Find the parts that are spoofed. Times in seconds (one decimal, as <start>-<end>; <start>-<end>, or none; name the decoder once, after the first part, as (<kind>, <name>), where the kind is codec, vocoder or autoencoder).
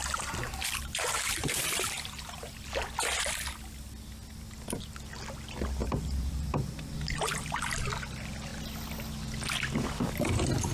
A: 0.0-2.5 (vocoder, BigVGAN v2); 5.8-6.7